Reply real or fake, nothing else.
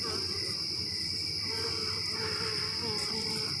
real